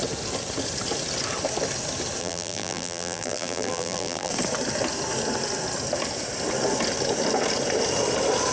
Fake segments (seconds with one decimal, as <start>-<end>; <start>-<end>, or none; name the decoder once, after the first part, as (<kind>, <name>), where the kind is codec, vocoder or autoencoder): 2.2-4.3 (vocoder, BigVGAN v2)